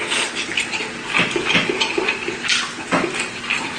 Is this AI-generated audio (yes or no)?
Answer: no